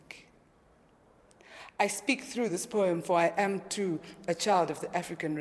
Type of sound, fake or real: fake